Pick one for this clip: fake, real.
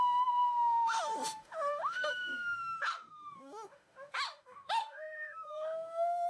fake